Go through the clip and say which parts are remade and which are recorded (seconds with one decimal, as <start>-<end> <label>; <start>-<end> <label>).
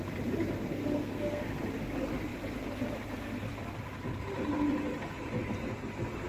0.0-0.6 recorded; 0.6-1.4 remade; 1.4-6.3 recorded